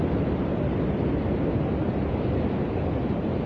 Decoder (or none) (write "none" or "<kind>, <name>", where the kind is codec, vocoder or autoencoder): none